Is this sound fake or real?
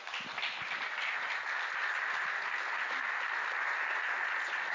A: real